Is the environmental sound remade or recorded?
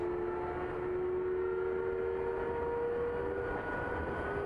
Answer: recorded